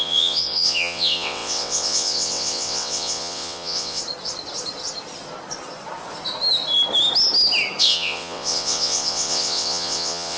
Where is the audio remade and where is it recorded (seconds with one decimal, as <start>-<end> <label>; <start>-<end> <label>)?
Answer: 0.0-4.0 remade; 4.0-7.8 recorded; 7.8-10.4 remade